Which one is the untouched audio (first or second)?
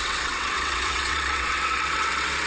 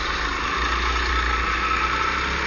second